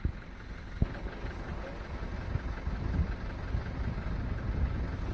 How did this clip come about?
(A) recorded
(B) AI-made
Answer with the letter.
A